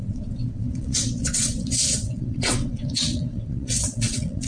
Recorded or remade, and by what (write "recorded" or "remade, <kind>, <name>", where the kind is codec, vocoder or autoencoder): remade, vocoder, WaveNeXt